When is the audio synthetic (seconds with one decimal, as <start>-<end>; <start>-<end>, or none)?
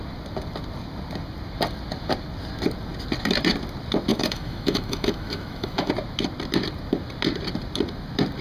4.1-5.9